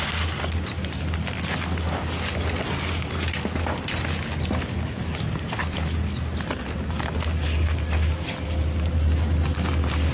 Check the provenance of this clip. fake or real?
real